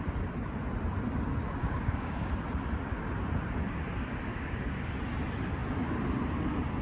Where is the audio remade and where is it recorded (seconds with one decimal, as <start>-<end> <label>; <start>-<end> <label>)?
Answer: 0.0-1.6 recorded; 1.6-2.3 remade; 2.3-4.3 recorded; 4.3-4.9 remade; 4.9-6.8 recorded